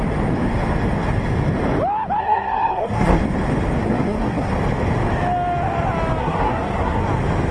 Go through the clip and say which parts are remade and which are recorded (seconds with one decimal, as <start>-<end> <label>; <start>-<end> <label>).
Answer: 0.0-2.2 recorded; 2.2-3.2 remade; 3.2-3.8 recorded; 3.8-4.5 remade; 4.5-6.2 recorded; 6.2-7.0 remade; 7.0-7.5 recorded